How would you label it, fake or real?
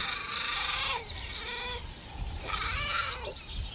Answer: real